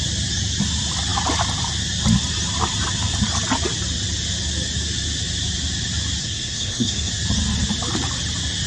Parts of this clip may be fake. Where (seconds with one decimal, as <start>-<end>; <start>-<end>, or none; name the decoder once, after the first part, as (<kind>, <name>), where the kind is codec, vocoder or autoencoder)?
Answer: 6.2-7.1 (codec, SNAC)